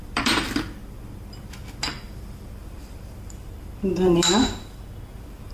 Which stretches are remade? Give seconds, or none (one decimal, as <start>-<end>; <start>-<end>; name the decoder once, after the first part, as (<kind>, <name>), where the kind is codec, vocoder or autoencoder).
0.0-4.3 (vocoder, BigVGAN v2); 5.1-5.5